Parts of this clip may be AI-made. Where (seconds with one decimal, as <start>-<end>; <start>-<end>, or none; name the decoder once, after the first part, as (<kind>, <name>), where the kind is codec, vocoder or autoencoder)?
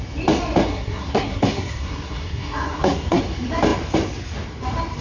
0.7-3.2 (codec, SNAC)